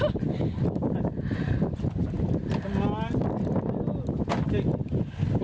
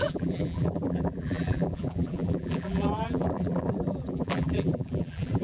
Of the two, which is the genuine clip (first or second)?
first